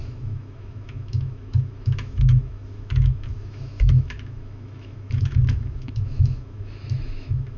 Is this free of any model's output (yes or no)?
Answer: no